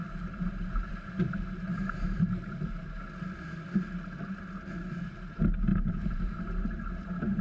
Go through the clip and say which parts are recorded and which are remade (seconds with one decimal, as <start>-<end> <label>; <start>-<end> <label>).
0.0-1.7 recorded; 1.7-2.2 remade; 2.2-5.7 recorded; 5.7-6.3 remade; 6.3-7.4 recorded

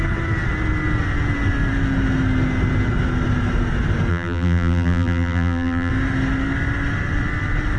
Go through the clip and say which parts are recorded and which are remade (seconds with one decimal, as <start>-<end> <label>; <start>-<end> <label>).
0.0-4.1 recorded; 4.1-5.9 remade; 5.9-7.8 recorded

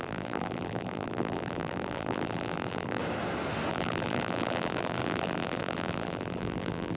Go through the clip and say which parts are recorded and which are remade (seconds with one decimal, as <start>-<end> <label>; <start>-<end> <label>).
0.0-3.0 remade; 3.0-3.7 recorded; 3.7-7.0 remade

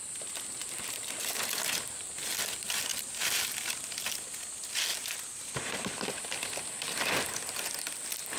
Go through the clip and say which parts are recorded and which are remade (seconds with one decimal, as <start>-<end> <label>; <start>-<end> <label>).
0.0-0.6 recorded; 0.6-2.1 remade; 2.1-2.9 recorded; 2.9-3.5 remade; 3.5-4.9 recorded; 4.9-5.9 remade; 5.9-8.4 recorded

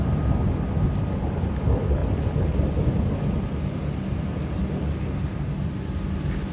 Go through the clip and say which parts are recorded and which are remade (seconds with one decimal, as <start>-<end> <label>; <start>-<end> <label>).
0.0-6.5 recorded

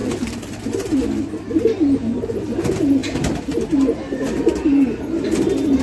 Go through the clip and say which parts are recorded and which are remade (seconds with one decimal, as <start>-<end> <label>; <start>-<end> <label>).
0.0-1.0 remade; 1.0-5.8 recorded

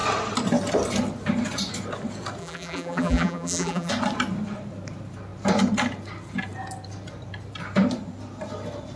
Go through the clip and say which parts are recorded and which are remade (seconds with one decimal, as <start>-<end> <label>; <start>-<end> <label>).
0.0-2.4 recorded; 2.4-3.9 remade; 3.9-9.0 recorded

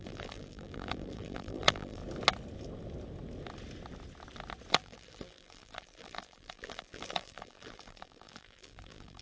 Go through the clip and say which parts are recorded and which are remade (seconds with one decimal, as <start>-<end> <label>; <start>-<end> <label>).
0.0-2.0 remade; 2.0-4.7 recorded; 4.7-9.2 remade